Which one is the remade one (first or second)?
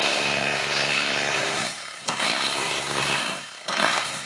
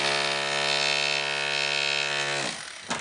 first